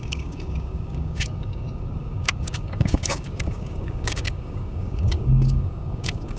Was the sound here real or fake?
fake